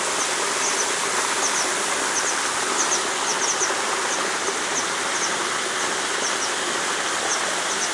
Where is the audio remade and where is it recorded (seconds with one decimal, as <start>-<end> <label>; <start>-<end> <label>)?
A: 0.0-7.9 recorded